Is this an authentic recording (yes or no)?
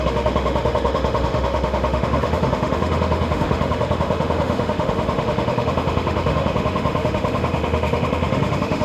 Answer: no